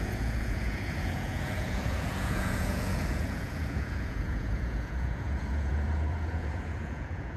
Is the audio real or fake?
fake